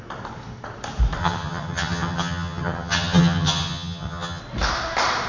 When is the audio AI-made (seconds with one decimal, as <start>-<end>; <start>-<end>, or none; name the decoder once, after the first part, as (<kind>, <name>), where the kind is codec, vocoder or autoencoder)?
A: 1.2-4.4 (vocoder, HiFi-GAN)